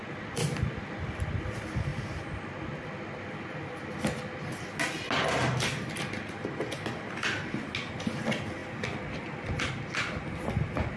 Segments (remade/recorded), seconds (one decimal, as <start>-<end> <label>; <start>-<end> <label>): 0.0-11.0 recorded